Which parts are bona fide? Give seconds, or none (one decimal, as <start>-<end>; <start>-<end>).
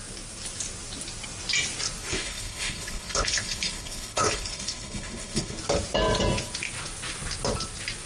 0.0-2.1; 5.6-8.1